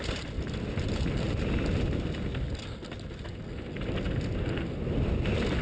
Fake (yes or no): no